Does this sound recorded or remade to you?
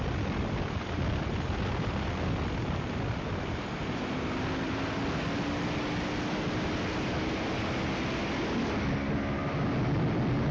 recorded